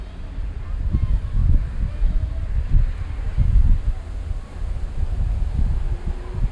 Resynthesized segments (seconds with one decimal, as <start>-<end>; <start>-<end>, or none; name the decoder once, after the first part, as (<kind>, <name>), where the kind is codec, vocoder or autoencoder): none